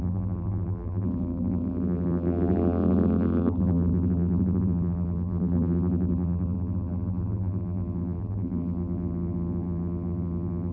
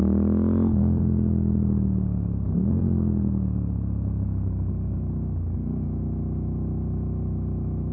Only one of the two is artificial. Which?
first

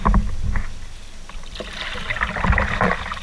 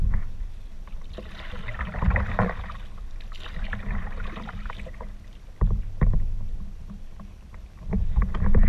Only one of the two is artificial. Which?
second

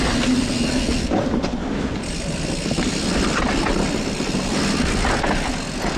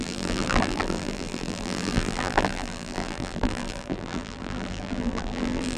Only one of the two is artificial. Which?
second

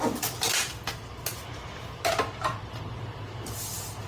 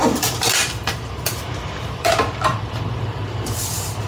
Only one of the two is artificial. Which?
second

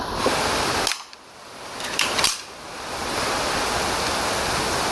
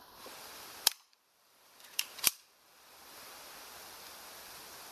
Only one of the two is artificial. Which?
second